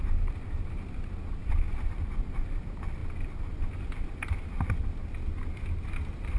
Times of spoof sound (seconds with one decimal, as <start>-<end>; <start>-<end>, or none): none